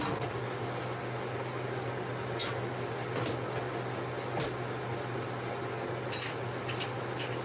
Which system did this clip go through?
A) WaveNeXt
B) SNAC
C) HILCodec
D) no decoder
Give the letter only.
D